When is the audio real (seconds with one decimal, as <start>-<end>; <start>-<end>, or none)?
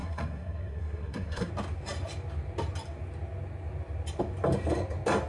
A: 1.5-5.3